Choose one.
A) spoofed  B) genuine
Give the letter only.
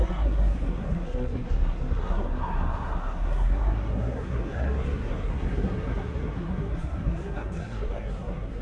A